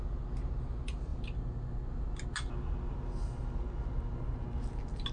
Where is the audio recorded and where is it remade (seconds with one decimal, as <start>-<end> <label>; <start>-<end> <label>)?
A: 0.0-5.1 recorded